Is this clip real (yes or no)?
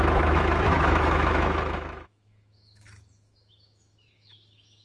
no